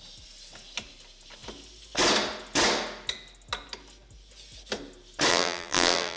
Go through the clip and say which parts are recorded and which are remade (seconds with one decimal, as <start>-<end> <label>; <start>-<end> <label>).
0.0-5.3 recorded; 5.3-6.2 remade